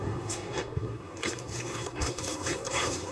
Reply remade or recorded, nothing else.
remade